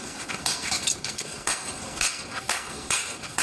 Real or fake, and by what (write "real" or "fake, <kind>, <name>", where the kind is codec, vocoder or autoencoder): fake, codec, SNAC